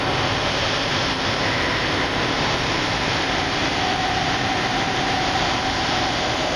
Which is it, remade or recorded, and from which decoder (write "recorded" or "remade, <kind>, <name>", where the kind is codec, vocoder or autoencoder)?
remade, vocoder, BigVGAN v2